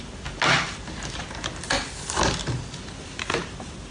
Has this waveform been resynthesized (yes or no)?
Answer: no